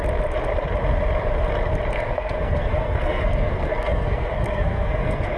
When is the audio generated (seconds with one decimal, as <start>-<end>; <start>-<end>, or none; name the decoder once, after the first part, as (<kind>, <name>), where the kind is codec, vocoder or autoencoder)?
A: 1.9-5.4 (codec, SNAC)